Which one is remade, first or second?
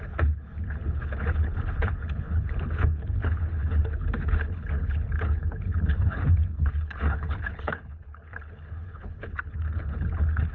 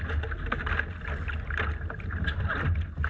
first